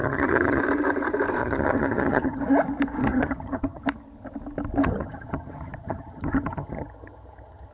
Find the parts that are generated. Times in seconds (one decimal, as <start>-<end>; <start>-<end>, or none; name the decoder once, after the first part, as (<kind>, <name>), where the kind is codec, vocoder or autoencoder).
0.0-0.6 (vocoder, HiFi-GAN); 1.4-2.4; 3.0-3.8; 4.8-7.7